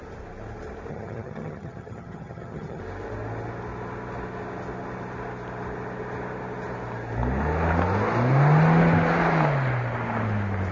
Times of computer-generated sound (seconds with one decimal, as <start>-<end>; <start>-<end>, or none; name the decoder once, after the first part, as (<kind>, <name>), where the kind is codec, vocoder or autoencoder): 0.9-2.8 (vocoder, HiFi-GAN)